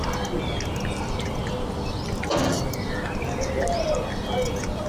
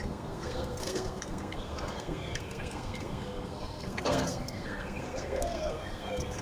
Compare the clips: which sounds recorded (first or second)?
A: first